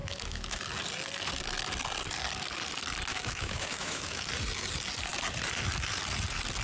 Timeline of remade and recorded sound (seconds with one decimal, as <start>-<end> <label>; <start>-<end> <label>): 0.0-0.6 remade; 0.6-3.1 recorded; 3.1-4.2 remade; 4.2-6.6 recorded